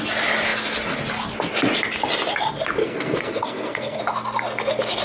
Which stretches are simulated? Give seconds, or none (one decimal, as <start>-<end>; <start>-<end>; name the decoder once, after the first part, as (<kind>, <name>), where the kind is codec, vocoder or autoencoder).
2.8-4.0 (codec, SNAC)